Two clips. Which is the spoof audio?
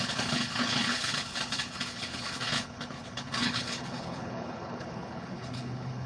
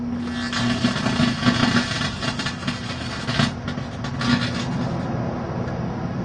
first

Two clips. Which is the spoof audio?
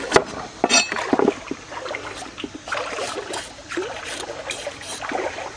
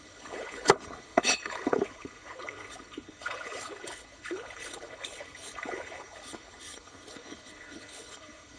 second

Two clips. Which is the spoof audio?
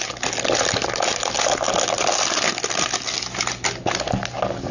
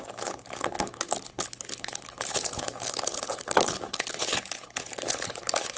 second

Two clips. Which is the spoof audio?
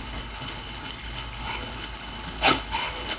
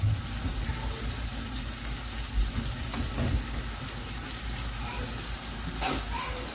first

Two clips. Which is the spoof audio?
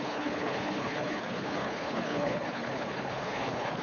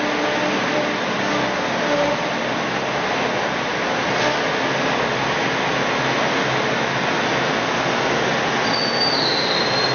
first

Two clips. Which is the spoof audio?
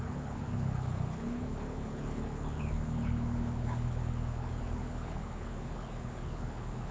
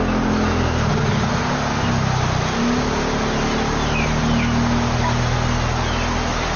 first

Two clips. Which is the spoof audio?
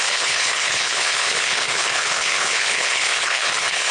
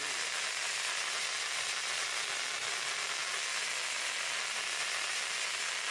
first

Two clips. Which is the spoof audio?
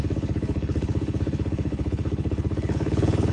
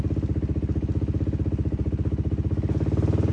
first